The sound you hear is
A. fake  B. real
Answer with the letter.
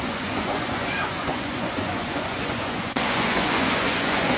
A